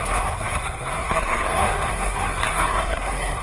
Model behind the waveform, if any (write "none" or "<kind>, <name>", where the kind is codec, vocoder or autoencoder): codec, SNAC